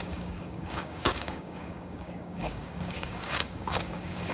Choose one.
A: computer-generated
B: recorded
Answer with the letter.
A